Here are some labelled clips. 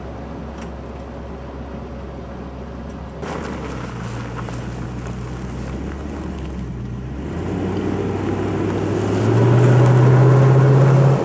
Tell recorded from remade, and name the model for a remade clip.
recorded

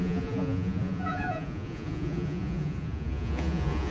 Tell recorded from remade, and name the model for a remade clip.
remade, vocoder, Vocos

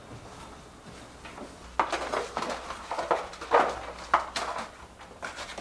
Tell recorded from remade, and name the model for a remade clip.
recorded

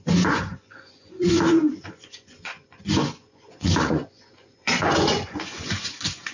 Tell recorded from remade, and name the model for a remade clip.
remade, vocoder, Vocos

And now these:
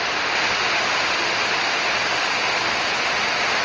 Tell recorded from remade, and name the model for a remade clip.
recorded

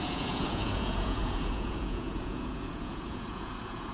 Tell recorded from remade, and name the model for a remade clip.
remade, vocoder, Vocos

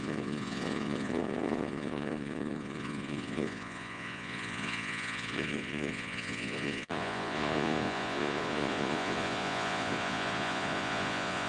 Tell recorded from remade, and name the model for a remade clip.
remade, vocoder, Vocos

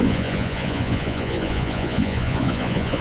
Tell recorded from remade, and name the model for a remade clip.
remade, vocoder, Vocos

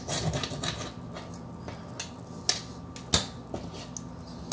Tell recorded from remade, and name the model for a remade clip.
recorded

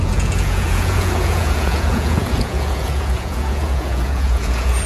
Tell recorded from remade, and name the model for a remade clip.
remade, vocoder, Vocos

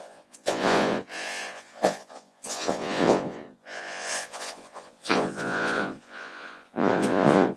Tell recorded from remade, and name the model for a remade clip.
remade, vocoder, Vocos